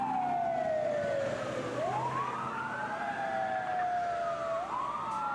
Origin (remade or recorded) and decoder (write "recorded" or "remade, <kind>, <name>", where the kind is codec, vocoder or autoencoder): recorded